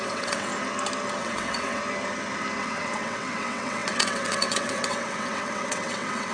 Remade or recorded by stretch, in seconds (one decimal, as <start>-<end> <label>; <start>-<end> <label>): 0.0-0.5 remade; 0.5-1.2 recorded; 1.2-1.8 remade; 1.8-2.6 recorded; 2.6-6.3 remade